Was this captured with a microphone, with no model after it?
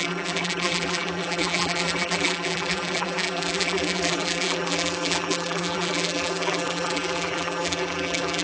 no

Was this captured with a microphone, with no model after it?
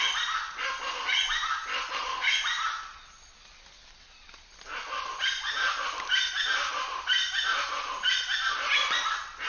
yes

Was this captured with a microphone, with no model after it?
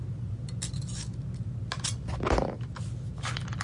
yes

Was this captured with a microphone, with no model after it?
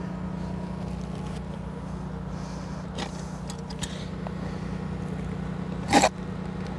yes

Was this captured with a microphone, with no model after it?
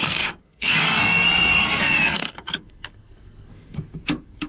no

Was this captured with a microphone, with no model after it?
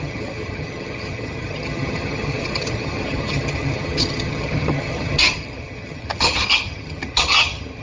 no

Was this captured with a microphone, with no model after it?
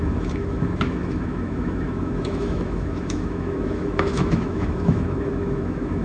no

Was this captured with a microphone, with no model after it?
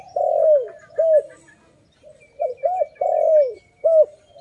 yes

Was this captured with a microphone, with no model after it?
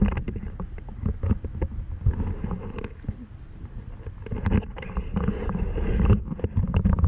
yes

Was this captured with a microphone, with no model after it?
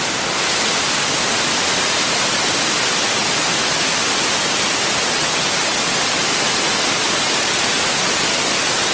yes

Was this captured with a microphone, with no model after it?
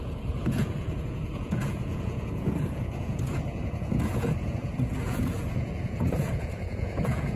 no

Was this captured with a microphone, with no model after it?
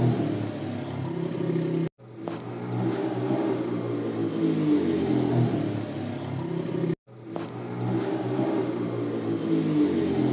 yes